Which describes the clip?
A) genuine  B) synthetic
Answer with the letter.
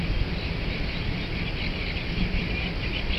A